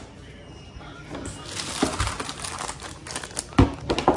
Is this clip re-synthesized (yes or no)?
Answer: no